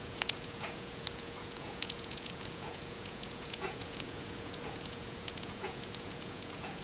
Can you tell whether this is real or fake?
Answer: fake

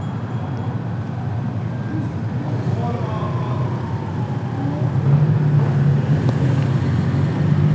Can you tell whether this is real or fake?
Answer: real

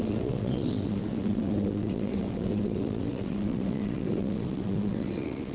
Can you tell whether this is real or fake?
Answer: fake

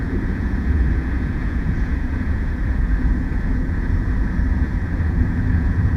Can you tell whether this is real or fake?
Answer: fake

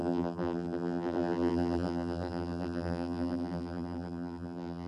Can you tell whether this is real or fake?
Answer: fake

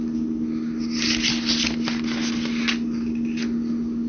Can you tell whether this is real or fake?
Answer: real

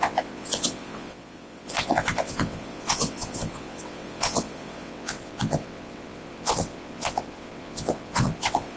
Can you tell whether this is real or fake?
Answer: fake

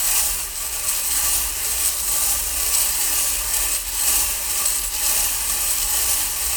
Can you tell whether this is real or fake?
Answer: real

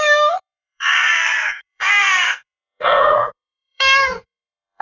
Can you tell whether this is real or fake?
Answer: fake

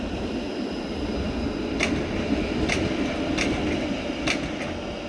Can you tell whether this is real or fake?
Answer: real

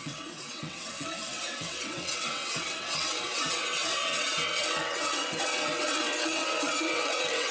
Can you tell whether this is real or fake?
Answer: fake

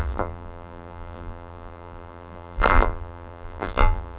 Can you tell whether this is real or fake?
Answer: fake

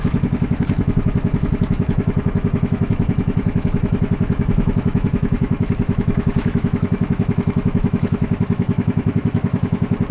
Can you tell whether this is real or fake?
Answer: fake